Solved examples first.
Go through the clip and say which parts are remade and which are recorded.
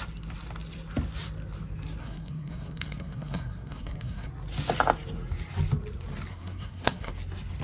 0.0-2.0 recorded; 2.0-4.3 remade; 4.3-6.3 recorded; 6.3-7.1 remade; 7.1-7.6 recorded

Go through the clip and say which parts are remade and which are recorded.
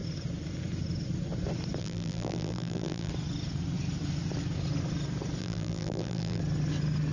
0.0-1.8 recorded; 1.8-3.1 remade; 3.1-5.4 recorded; 5.4-6.4 remade; 6.4-7.1 recorded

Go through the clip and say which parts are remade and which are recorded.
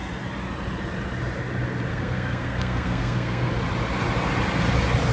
0.0-1.9 recorded; 1.9-3.5 remade; 3.5-5.1 recorded